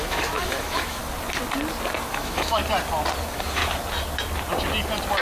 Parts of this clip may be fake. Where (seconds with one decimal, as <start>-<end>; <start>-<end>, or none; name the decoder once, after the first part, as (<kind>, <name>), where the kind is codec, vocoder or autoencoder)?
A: 0.0-1.0 (autoencoder, DAC-VAE); 2.1-2.6; 3.2-3.6